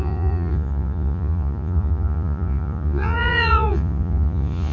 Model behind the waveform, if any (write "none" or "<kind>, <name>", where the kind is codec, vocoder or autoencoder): vocoder, Vocos